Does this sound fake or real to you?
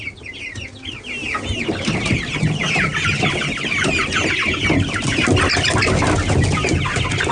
real